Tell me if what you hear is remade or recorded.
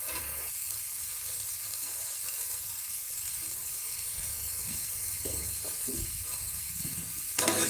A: remade